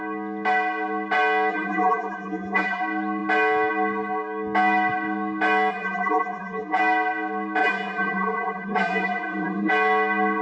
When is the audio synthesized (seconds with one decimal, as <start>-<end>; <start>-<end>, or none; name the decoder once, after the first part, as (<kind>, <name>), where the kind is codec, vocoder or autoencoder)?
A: 1.5-2.8 (vocoder, BigVGAN v2); 5.7-6.8; 7.6-9.7